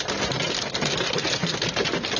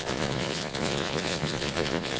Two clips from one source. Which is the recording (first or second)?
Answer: first